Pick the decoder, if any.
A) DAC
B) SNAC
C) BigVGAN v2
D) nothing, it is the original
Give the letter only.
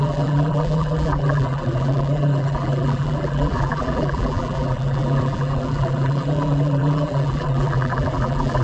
C